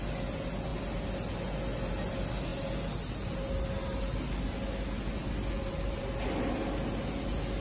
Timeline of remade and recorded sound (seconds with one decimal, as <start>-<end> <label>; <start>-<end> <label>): 0.0-7.6 recorded